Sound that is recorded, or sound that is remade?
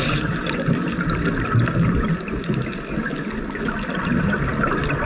recorded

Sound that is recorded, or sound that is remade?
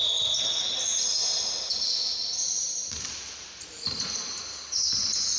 recorded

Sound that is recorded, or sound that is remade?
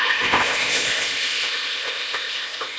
remade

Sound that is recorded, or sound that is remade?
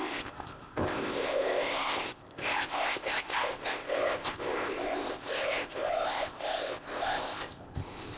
remade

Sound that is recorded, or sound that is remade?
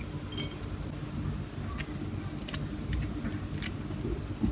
recorded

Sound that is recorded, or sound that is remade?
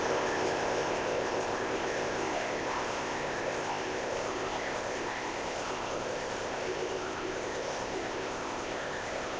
remade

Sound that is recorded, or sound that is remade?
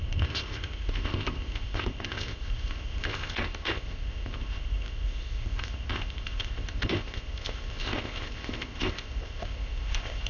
remade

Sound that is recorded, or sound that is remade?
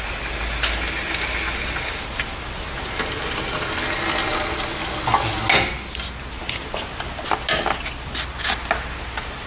recorded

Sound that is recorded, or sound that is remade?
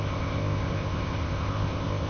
remade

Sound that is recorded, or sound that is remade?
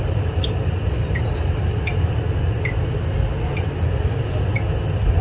recorded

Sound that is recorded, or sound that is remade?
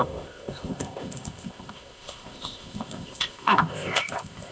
remade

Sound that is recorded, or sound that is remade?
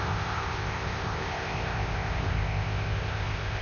remade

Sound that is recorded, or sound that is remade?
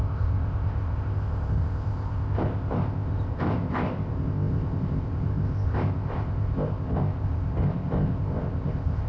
remade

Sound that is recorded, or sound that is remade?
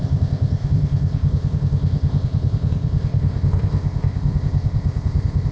remade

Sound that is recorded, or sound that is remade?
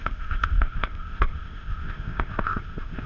remade